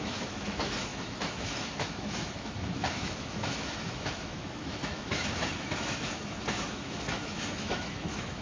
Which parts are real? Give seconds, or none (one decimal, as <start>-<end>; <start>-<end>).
none